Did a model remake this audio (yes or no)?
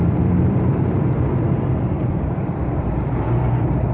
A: yes